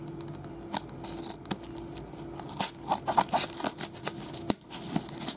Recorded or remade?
recorded